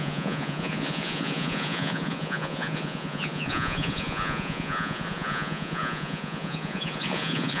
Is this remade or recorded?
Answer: remade